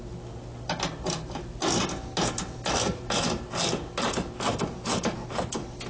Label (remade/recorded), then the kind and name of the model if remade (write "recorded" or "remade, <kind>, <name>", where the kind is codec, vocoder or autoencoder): recorded